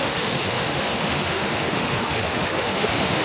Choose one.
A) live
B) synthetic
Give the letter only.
B